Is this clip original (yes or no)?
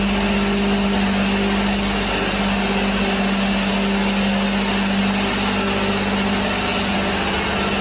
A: yes